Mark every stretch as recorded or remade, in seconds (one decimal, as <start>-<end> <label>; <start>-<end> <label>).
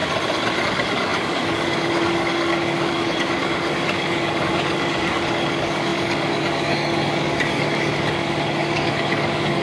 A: 0.0-0.6 recorded; 0.6-9.6 remade